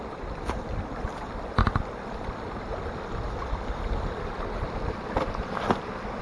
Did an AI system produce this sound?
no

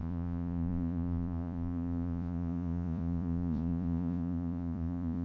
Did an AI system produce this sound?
yes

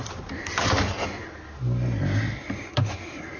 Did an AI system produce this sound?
no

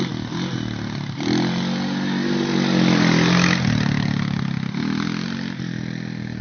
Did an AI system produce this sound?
no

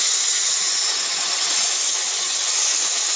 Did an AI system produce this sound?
yes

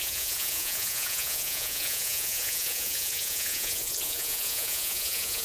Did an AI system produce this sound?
yes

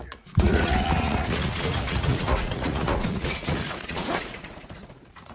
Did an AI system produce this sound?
yes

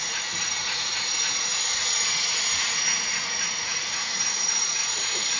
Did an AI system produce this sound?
yes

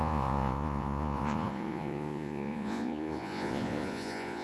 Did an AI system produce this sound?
yes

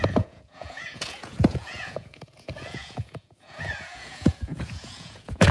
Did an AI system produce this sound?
yes